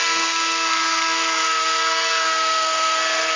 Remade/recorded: remade